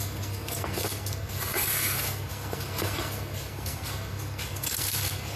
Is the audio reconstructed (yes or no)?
yes